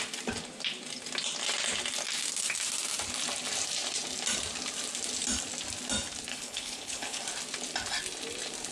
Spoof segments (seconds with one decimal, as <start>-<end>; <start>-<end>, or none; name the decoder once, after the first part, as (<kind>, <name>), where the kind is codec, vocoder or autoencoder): 6.3-7.2 (codec, HILCodec)